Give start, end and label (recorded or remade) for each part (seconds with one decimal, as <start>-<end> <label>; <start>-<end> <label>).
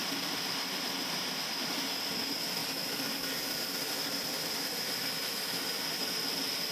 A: 0.0-6.7 recorded